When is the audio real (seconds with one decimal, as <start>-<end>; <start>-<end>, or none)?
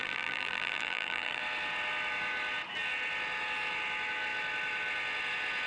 1.4-5.7